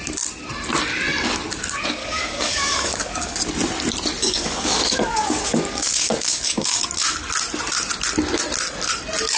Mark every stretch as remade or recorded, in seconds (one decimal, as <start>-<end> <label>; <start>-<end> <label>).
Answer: 0.0-2.0 recorded; 2.0-3.4 remade; 3.4-4.2 recorded; 4.2-6.8 remade; 6.8-9.4 recorded